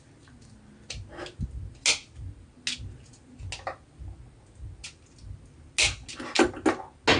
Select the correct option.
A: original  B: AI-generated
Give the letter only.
A